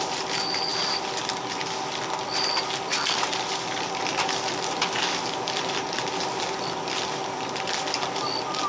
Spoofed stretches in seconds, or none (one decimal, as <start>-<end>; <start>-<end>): none